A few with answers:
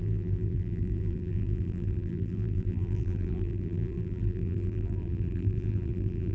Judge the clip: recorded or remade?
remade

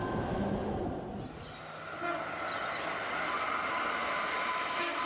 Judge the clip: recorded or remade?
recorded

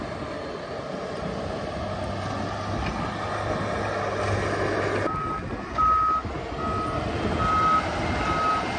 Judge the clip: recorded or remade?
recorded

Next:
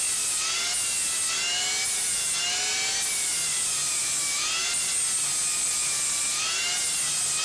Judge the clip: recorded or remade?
recorded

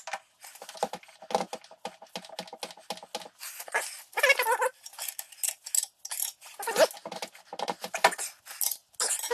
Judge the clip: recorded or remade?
recorded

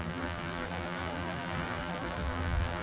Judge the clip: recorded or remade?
remade